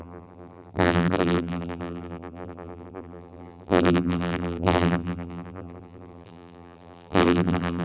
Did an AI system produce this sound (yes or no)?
yes